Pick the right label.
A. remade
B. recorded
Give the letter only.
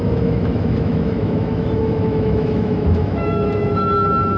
A